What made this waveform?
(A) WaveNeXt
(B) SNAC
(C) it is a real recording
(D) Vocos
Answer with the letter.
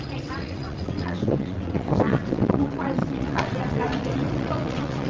A